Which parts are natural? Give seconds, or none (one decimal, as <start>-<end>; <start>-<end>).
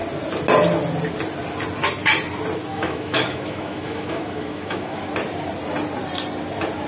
0.0-2.7; 5.1-6.9